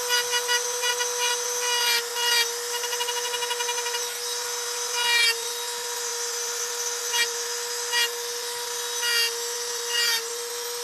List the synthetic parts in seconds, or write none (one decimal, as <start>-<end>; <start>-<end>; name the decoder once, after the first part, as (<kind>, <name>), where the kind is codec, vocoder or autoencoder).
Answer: none